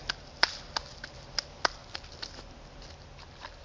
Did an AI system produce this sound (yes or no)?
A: no